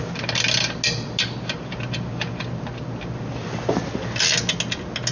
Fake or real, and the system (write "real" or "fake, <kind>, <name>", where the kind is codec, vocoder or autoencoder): real